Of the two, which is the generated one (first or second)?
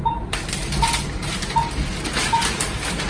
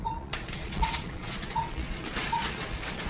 second